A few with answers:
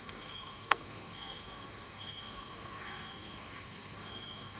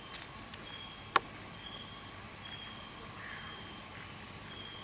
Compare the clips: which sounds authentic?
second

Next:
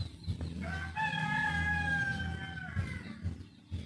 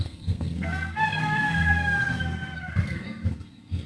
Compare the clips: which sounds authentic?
first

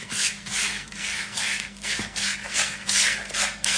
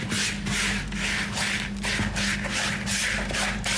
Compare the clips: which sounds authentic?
second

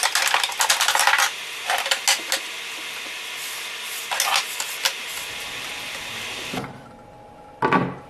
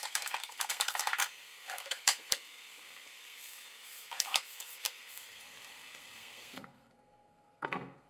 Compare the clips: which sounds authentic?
first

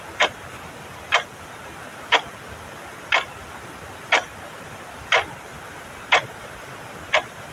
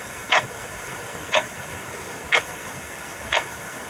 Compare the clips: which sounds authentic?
first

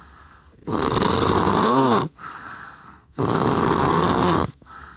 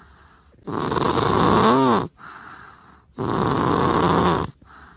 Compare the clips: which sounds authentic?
second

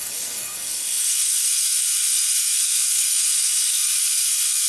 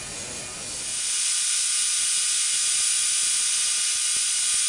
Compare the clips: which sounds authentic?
second